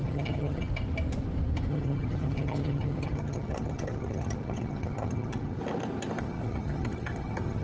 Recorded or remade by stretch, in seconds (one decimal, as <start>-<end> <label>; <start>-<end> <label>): 0.0-0.7 remade; 0.7-1.7 recorded; 1.7-5.6 remade; 5.6-6.2 recorded; 6.2-7.6 remade